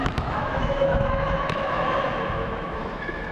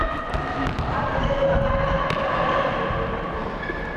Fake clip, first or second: first